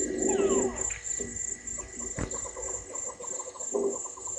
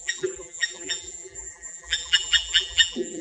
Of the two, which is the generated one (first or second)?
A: second